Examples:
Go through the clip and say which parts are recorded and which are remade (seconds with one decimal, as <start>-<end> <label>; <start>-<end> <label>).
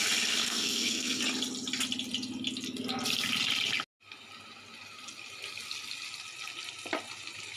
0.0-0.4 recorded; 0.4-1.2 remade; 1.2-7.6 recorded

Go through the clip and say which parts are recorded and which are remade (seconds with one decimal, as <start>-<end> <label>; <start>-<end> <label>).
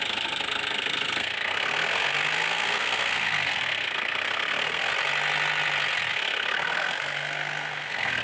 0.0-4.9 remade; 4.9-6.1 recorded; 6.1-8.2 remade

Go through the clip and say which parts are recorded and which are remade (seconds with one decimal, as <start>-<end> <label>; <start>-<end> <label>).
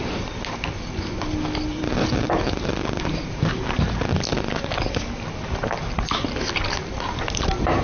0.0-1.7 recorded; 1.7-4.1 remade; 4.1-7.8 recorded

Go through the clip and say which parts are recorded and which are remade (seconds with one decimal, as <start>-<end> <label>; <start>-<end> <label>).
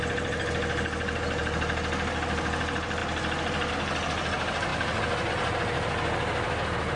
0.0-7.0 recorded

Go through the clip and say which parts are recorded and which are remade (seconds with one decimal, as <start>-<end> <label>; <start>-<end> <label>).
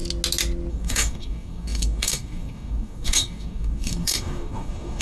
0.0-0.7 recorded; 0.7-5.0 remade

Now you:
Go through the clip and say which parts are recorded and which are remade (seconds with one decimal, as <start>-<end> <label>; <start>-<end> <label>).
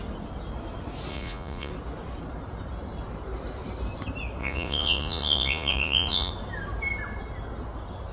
0.0-1.1 recorded; 1.1-1.7 remade; 1.7-4.4 recorded; 4.4-6.3 remade; 6.3-8.1 recorded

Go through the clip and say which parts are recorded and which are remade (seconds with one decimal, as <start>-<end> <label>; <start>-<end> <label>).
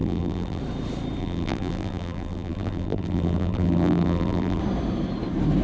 0.0-0.6 remade; 0.6-1.2 recorded; 1.2-4.6 remade; 4.6-5.6 recorded